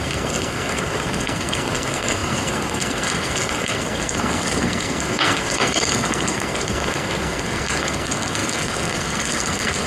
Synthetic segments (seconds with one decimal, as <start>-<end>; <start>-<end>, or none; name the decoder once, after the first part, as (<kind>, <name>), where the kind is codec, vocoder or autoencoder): 0.0-9.9 (codec, SNAC)